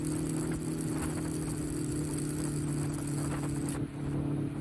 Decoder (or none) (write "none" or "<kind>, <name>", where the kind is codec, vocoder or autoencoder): none